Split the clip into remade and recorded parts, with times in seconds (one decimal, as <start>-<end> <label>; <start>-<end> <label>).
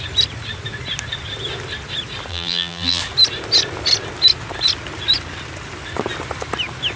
0.0-2.3 recorded; 2.3-3.0 remade; 3.0-7.0 recorded